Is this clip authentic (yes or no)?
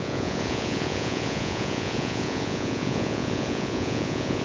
no